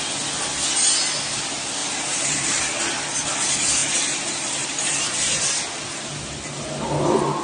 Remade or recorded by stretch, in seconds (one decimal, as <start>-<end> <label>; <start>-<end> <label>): 0.0-1.8 recorded; 1.8-2.6 remade; 2.6-3.8 recorded; 3.8-5.4 remade; 5.4-7.4 recorded